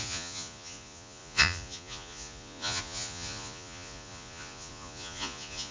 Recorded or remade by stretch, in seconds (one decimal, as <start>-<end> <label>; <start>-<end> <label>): 0.0-5.7 remade